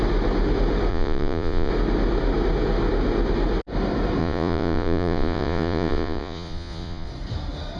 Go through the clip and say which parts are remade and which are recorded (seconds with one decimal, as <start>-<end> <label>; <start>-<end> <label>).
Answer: 0.0-0.9 recorded; 0.9-1.7 remade; 1.7-4.2 recorded; 4.2-7.1 remade; 7.1-7.8 recorded